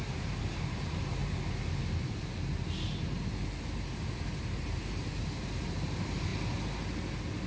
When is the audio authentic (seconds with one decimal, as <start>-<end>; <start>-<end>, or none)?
0.0-7.5